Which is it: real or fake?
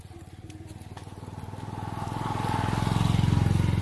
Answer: real